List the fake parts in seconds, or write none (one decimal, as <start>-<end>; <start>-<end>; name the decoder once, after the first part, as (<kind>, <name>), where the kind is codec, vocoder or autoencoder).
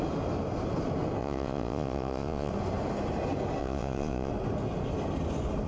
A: 1.2-2.5 (vocoder, Vocos); 3.6-4.3